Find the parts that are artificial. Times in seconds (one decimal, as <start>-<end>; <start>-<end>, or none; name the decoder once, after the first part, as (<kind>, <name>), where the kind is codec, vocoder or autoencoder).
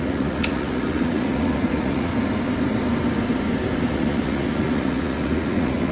0.0-2.1 (vocoder, Vocos); 3.9-5.9